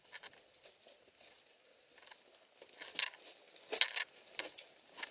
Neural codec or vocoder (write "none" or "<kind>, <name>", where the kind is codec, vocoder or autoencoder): none